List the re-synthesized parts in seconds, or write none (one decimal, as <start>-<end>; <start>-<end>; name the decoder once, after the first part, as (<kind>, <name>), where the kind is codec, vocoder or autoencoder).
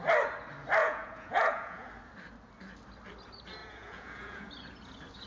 0.8-1.9 (vocoder, Vocos); 3.6-4.5